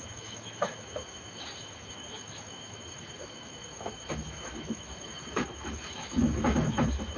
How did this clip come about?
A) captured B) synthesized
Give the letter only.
B